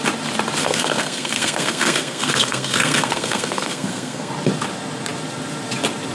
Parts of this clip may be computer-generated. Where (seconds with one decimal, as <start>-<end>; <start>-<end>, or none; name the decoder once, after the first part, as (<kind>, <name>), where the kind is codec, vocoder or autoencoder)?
0.6-4.3 (codec, SNAC)